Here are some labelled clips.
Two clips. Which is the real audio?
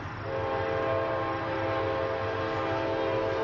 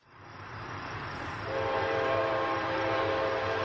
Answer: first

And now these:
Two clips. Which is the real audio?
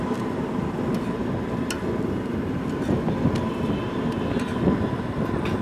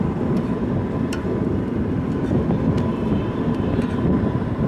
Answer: first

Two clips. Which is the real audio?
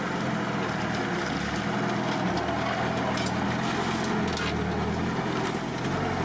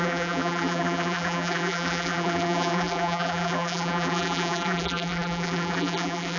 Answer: first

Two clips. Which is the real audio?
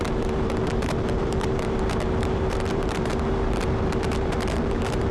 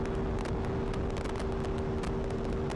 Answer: second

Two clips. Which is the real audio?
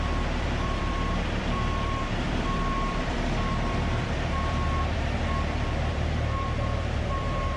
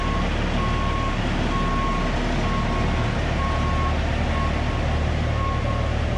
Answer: second